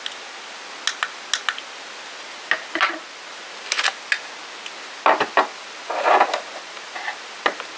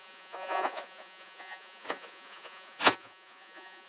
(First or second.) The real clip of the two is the first